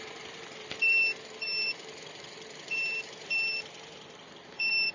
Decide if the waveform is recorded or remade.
remade